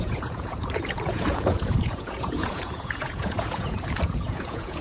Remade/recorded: remade